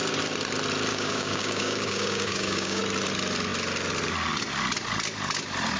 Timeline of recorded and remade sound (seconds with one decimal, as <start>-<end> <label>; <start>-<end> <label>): 0.0-0.9 recorded; 0.9-2.8 remade; 2.8-5.8 recorded